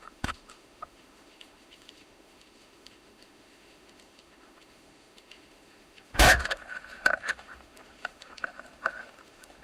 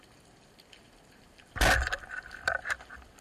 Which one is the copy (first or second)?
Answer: first